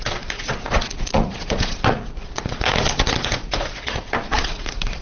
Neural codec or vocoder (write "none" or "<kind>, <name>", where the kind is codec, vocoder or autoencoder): vocoder, Vocos